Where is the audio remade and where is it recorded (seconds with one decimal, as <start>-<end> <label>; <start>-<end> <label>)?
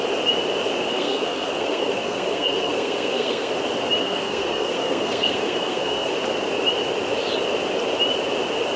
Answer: 0.0-0.9 recorded; 0.9-3.5 remade; 3.5-4.0 recorded; 4.0-6.1 remade; 6.1-8.8 recorded